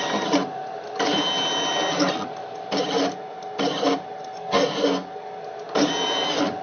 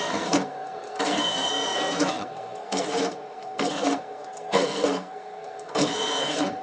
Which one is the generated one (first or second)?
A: second